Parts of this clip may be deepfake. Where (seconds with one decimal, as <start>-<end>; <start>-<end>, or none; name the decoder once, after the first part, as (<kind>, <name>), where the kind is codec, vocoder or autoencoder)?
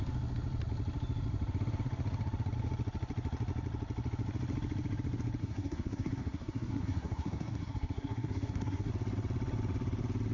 5.4-8.9 (codec, SNAC)